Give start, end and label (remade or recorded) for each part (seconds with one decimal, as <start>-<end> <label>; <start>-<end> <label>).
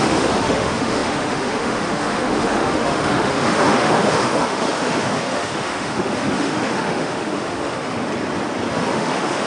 0.0-8.1 remade; 8.1-8.7 recorded; 8.7-9.5 remade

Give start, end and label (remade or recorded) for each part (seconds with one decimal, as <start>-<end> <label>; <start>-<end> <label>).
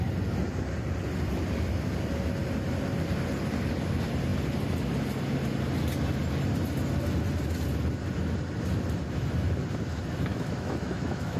0.0-10.3 recorded; 10.3-11.4 remade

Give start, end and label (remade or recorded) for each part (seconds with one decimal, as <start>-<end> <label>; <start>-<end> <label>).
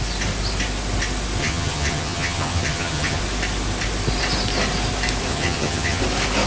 0.0-1.4 recorded; 1.4-3.2 remade; 3.2-5.3 recorded; 5.3-6.0 remade; 6.0-6.5 recorded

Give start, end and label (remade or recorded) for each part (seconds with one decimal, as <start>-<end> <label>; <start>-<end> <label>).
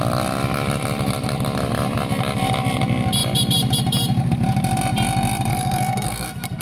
0.0-5.5 recorded; 5.5-6.6 remade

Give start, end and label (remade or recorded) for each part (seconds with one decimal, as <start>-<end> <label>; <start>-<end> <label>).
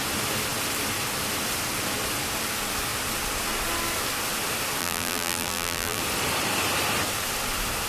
0.0-4.8 recorded; 4.8-6.0 remade; 6.0-7.9 recorded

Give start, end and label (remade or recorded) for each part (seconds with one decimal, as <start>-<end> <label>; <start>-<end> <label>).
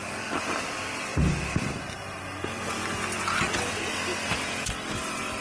0.0-5.4 recorded